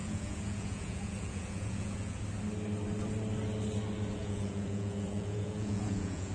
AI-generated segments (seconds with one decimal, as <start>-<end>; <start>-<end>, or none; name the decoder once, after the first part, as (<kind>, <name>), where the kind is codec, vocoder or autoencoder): 0.0-2.2 (vocoder, Vocos); 4.2-6.3